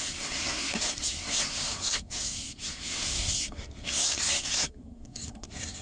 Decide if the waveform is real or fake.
fake